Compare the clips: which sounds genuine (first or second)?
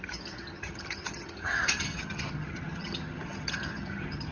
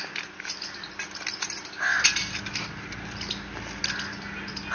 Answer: second